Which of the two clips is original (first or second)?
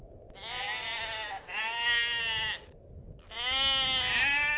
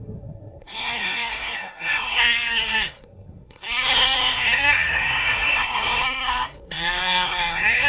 first